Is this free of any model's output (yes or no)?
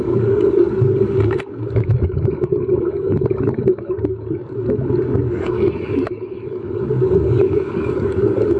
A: no